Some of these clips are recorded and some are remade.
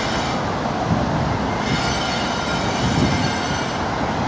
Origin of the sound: recorded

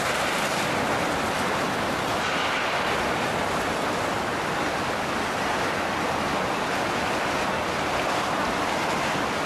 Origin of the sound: recorded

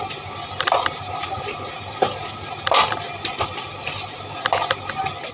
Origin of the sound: recorded